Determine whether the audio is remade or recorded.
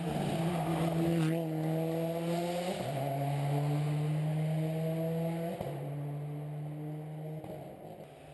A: recorded